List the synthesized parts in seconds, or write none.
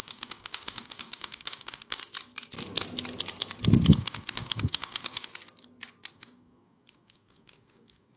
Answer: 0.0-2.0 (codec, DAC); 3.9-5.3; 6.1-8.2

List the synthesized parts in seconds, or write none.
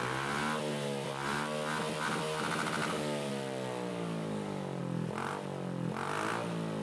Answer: 2.8-3.3 (codec, DAC); 3.9-4.8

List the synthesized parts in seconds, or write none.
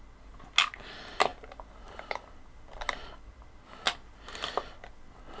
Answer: none